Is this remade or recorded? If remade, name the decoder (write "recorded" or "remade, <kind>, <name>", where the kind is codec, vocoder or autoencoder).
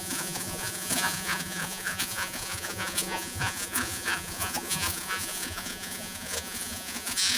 remade, vocoder, Vocos